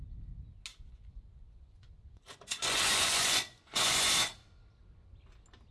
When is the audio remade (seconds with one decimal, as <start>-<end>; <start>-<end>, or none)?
0.7-4.1